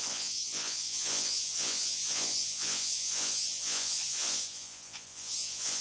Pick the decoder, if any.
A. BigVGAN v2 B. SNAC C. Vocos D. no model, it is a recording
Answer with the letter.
C